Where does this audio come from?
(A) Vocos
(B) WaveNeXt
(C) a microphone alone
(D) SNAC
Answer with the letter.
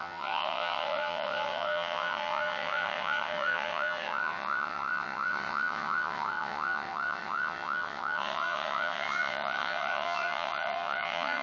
B